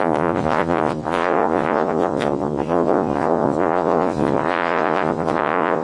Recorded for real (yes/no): no